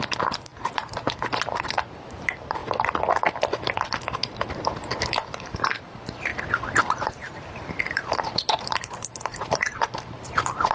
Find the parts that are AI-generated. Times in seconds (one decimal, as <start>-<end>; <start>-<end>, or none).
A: 0.0-2.6; 4.6-6.3; 6.8-10.7